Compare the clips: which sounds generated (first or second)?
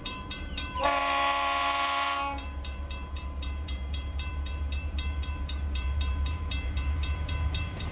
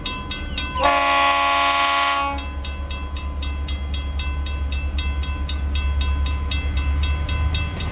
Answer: first